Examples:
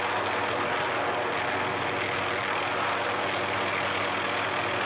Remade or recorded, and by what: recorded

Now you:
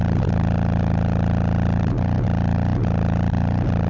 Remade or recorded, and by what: recorded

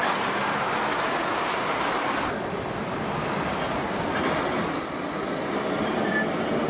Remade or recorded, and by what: recorded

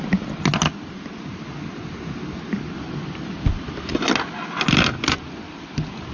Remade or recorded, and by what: recorded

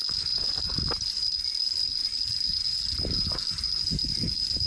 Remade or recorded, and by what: recorded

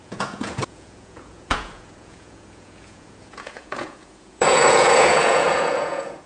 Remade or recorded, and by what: remade, vocoder, Vocos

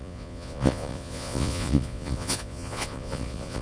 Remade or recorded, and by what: remade, vocoder, Vocos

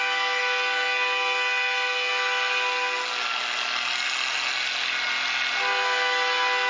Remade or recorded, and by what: recorded